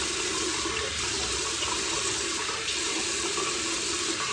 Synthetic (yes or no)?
yes